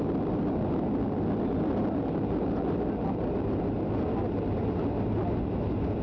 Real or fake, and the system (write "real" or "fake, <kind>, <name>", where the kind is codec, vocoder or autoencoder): real